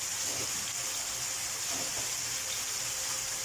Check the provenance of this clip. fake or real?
real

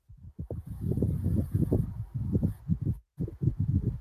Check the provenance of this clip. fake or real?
real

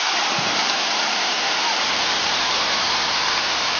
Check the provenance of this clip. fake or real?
real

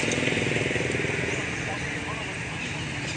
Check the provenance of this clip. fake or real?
real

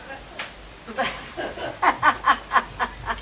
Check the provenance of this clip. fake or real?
real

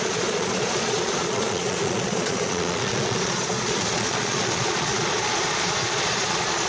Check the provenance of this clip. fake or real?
fake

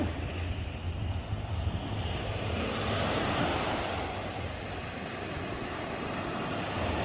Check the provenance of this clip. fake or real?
real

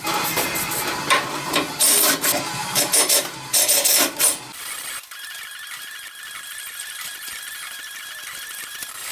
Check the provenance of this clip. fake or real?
real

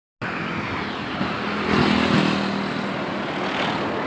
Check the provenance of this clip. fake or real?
real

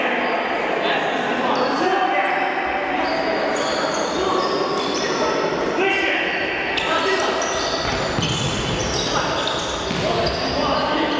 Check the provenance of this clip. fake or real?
real